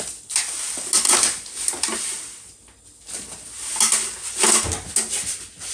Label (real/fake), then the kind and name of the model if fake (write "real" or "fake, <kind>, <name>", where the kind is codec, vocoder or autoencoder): real